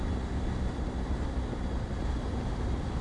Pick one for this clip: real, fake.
fake